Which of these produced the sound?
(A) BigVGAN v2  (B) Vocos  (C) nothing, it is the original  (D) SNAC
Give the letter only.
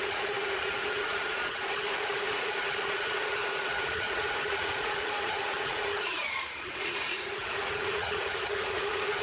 B